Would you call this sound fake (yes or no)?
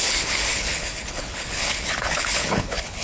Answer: yes